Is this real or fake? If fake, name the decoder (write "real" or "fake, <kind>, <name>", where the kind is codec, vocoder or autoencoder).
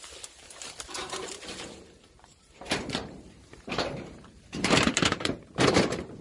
fake, vocoder, BigVGAN v2